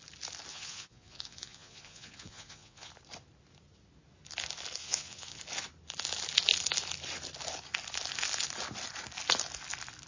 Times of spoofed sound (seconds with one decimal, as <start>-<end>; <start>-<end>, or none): 0.5-2.9; 4.8-5.4